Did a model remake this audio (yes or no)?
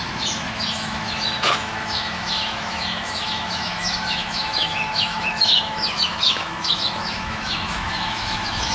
yes